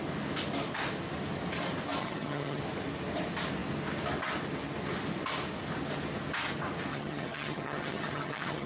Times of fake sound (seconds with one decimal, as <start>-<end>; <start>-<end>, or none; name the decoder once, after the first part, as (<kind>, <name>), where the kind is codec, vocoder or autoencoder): 2.0-2.6 (vocoder, HiFi-GAN); 6.9-8.7